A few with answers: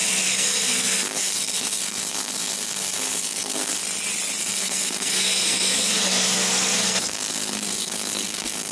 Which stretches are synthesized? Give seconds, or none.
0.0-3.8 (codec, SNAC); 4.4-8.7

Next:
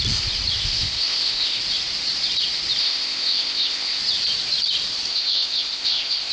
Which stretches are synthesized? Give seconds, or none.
0.6-1.6 (codec, ZipCodec); 2.8-4.0; 5.1-6.3

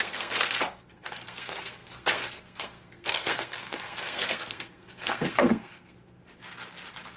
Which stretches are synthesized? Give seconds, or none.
0.0-6.2 (codec, SNAC)

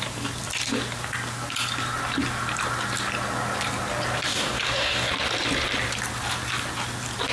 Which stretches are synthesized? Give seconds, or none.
4.3-5.1 (codec, DAC)

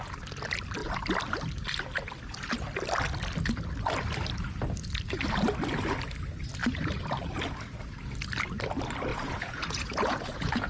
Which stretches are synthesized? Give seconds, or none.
9.1-10.7 (vocoder, Vocos)

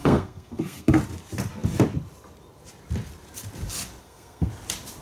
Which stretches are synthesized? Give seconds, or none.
0.0-1.0 (codec, SNAC); 4.0-4.5

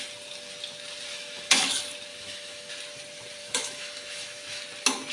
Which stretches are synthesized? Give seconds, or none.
1.1-1.7 (autoencoder, DAC-VAE); 2.1-2.7; 3.4-4.6